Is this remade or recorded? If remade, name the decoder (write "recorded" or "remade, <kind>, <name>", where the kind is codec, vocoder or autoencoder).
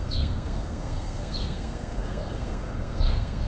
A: remade, codec, SNAC